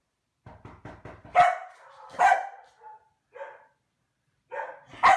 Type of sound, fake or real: real